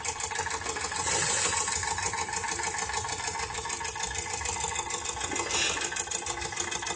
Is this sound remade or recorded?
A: recorded